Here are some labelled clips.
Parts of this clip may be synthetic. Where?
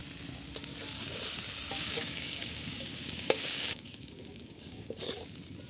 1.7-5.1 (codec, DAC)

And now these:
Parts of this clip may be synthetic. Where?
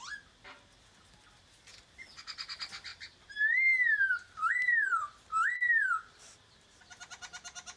2.9-6.8 (vocoder, BigVGAN v2)